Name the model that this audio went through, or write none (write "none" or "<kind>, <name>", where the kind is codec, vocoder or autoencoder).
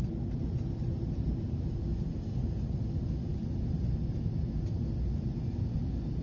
none